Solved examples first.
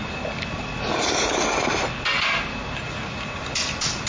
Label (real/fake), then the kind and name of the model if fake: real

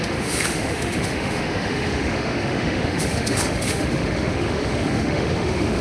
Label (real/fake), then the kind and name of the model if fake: fake, autoencoder, DAC-VAE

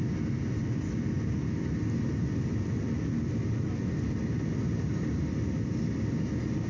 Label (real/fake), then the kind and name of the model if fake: real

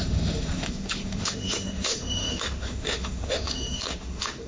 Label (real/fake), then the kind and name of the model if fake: fake, autoencoder, DAC-VAE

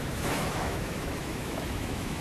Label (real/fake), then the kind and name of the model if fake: fake, autoencoder, DAC-VAE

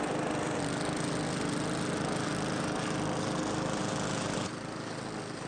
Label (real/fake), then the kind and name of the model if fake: real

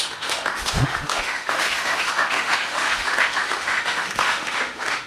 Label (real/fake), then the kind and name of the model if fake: fake, autoencoder, DAC-VAE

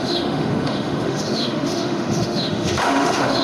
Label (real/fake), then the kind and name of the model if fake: fake, autoencoder, DAC-VAE